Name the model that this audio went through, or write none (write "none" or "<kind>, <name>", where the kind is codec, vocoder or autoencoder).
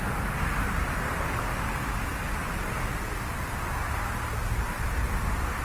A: none